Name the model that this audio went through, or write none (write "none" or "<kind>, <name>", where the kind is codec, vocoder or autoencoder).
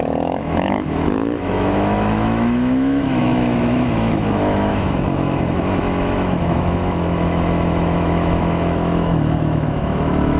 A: autoencoder, DAC-VAE